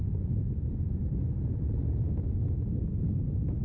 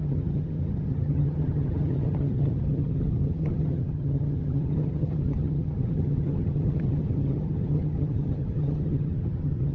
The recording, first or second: first